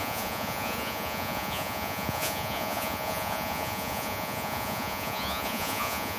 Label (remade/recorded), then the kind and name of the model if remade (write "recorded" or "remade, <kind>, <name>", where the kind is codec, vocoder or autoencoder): remade, vocoder, Vocos